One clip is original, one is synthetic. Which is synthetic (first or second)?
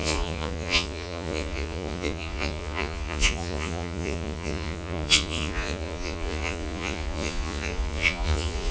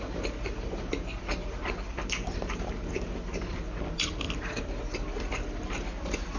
first